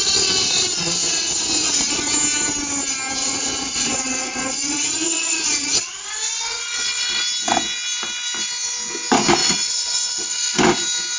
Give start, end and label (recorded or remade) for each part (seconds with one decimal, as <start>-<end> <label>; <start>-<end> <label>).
0.0-0.4 recorded; 0.4-2.0 remade; 2.0-3.2 recorded; 3.2-7.2 remade; 7.2-9.4 recorded; 9.4-10.6 remade; 10.6-11.2 recorded